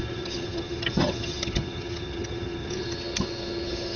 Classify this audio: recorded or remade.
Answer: remade